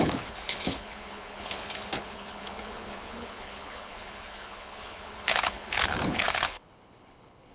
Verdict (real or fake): fake